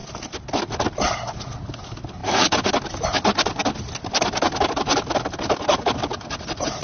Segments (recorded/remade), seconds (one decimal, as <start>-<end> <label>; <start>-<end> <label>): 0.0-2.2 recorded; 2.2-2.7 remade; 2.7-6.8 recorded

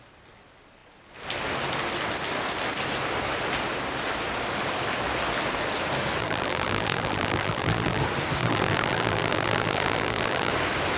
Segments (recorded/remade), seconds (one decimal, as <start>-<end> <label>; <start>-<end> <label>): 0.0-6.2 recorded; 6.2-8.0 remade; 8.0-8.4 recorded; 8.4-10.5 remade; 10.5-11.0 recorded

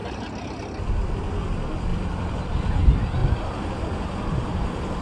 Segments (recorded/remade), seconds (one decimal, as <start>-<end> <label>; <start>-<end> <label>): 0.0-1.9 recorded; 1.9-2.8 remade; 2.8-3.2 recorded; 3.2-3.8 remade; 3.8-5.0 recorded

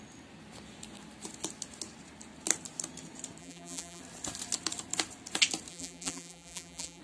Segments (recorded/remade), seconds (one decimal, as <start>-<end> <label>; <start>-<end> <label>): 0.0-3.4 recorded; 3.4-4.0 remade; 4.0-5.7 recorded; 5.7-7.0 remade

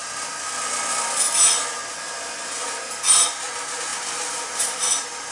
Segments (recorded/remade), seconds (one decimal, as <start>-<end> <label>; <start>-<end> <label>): 0.0-0.7 remade; 0.7-3.9 recorded; 3.9-5.3 remade

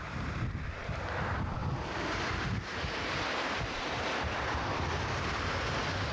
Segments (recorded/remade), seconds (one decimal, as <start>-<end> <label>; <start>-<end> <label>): 0.0-6.1 remade

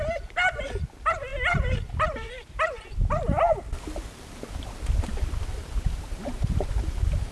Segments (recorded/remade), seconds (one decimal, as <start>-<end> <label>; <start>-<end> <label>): 0.0-5.6 recorded; 5.6-7.3 remade

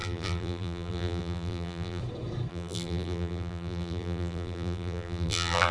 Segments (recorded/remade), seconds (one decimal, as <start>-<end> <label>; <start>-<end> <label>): 0.0-2.0 remade; 2.0-2.5 recorded; 2.5-5.7 remade